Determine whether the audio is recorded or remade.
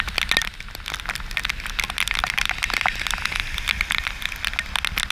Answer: recorded